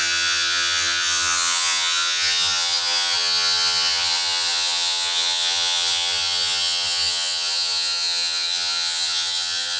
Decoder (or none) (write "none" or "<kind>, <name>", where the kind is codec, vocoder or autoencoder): vocoder, HiFi-GAN